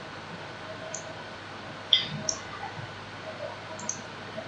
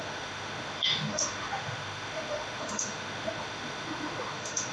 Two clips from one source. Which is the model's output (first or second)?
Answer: second